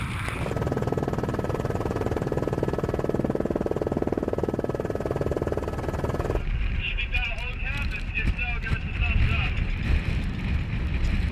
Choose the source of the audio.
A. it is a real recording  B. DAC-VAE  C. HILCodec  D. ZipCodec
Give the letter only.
A